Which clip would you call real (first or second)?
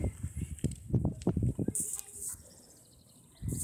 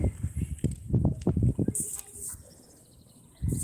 second